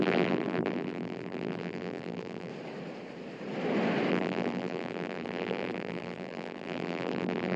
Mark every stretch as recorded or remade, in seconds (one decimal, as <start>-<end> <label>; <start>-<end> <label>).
0.0-2.5 remade; 2.5-4.1 recorded; 4.1-7.6 remade